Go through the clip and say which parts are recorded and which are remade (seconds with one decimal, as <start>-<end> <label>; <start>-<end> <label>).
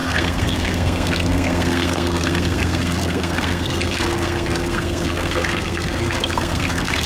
0.0-7.1 remade